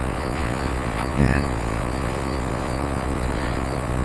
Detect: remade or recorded remade